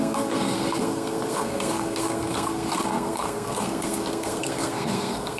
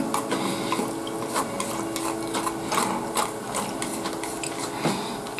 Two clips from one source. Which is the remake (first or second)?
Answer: first